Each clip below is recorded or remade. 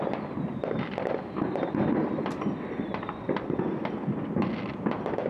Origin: recorded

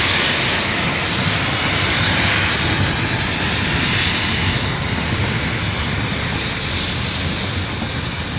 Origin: recorded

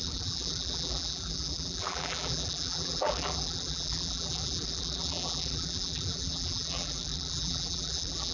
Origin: remade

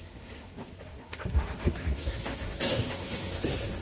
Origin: remade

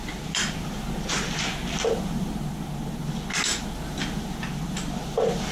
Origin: recorded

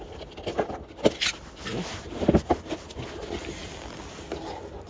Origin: recorded